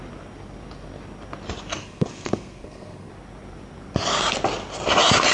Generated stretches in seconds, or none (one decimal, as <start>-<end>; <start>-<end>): 1.8-3.1